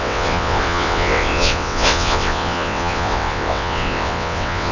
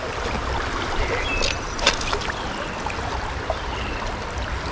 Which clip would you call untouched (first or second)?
second